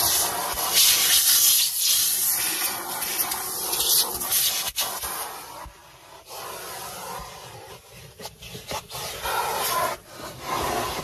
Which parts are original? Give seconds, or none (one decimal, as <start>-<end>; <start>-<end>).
0.0-0.4; 1.8-11.0